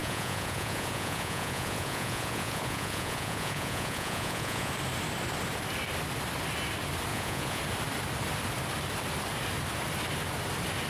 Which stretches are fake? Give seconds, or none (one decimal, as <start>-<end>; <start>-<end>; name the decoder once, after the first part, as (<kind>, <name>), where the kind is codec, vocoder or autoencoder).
0.0-4.7 (vocoder, Vocos); 7.1-7.6